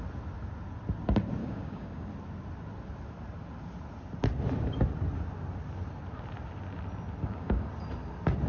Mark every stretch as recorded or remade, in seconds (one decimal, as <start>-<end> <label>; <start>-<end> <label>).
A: 0.0-1.4 recorded; 1.4-2.1 remade; 2.1-7.2 recorded; 7.2-7.7 remade; 7.7-8.5 recorded